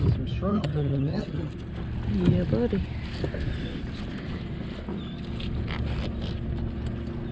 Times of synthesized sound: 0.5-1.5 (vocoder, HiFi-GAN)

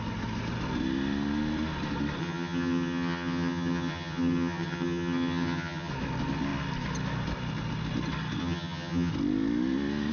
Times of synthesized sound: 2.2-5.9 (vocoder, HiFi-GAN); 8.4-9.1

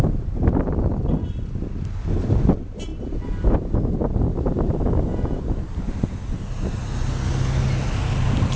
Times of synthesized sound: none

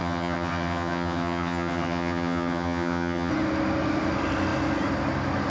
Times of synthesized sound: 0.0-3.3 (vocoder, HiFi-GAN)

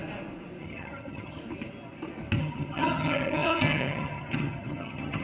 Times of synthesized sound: 0.6-1.4 (vocoder, HiFi-GAN); 2.4-5.2